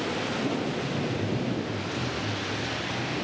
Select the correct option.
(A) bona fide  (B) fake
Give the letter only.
A